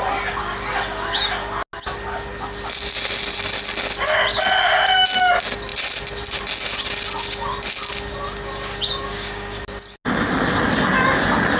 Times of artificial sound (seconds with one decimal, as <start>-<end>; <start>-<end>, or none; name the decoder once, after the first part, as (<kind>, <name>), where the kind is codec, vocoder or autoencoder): 9.1-9.6 (codec, DAC)